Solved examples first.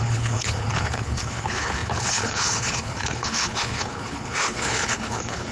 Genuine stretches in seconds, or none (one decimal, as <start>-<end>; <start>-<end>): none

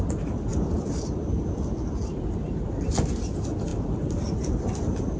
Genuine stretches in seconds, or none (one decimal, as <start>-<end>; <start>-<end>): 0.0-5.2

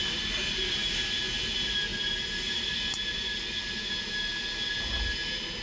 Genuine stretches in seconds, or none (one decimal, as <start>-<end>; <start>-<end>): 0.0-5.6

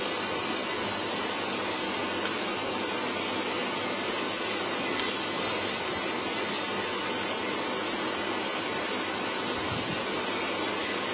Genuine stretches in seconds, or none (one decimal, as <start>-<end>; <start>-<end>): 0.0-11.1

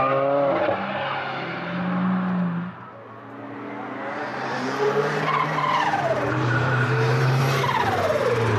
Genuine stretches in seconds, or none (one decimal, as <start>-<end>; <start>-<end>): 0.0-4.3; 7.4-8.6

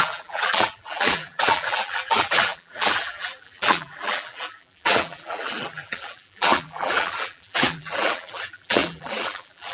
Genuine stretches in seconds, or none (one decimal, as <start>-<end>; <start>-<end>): none